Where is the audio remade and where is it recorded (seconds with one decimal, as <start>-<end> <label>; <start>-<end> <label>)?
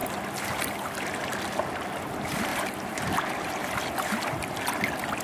0.0-0.9 remade; 0.9-2.5 recorded; 2.5-4.7 remade; 4.7-5.2 recorded